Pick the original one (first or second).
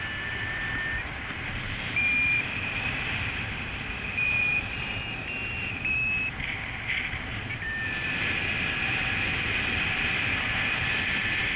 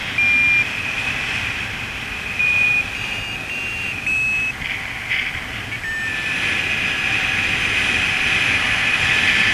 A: second